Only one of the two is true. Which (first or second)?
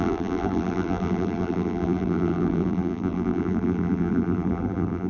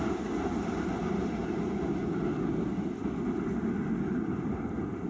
second